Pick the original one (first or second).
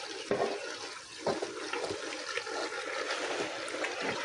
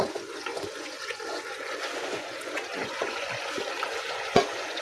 first